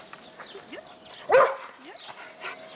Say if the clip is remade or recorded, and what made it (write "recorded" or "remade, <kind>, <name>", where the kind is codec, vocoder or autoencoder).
recorded